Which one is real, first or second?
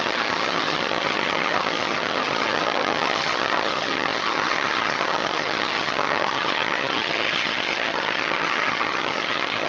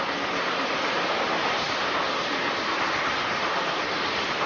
second